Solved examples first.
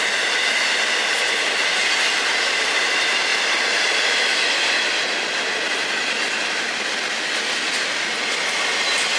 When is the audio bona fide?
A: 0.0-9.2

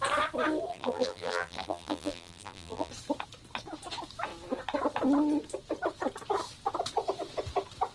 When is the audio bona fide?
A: 0.0-0.7; 2.9-7.9